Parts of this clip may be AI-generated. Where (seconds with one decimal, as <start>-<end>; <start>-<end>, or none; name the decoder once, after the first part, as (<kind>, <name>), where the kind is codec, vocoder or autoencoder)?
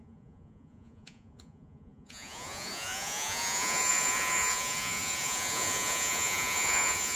0.0-7.2 (vocoder, Vocos)